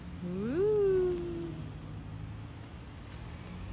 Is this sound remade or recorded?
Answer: recorded